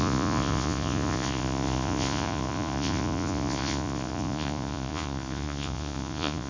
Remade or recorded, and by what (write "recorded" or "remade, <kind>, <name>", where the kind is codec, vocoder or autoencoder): remade, vocoder, Vocos